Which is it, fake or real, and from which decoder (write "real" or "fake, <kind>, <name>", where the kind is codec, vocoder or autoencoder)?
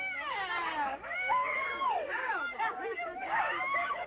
fake, codec, DAC